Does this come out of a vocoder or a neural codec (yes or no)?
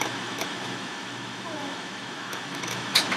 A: yes